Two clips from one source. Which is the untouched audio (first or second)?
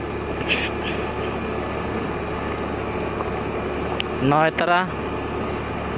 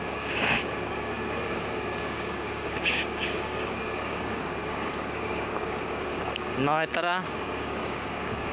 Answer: first